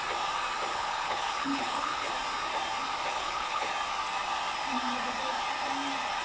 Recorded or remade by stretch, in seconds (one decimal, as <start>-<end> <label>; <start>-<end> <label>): 0.0-0.7 recorded; 0.7-2.1 remade; 2.1-3.1 recorded; 3.1-3.7 remade; 3.7-6.2 recorded